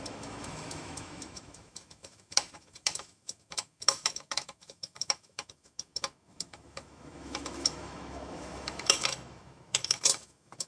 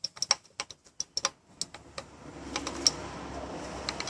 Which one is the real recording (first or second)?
second